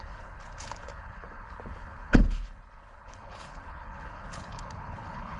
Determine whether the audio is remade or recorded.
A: remade